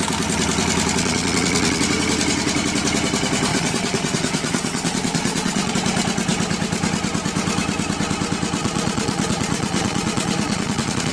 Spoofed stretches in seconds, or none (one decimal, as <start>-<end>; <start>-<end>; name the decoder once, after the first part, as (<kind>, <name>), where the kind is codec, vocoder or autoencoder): 1.0-1.8 (vocoder, Vocos); 3.5-5.7; 8.6-11.1